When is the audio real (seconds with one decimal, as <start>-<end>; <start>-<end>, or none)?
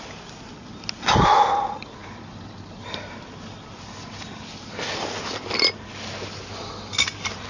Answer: 0.0-7.5